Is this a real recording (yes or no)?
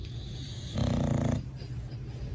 yes